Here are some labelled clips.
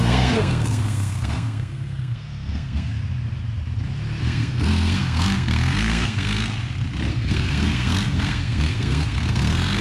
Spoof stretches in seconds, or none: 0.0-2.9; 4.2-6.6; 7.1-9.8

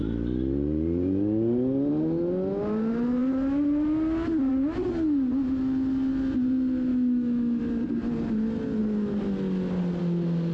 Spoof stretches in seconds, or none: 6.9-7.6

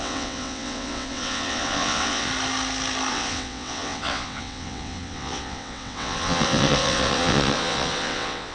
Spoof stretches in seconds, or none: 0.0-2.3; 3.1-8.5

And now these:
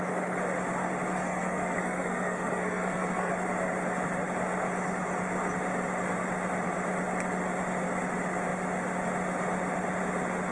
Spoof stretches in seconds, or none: 1.1-3.3